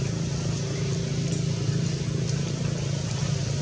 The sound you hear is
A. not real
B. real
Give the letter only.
B